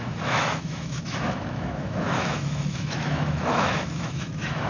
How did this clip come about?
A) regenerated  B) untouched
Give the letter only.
A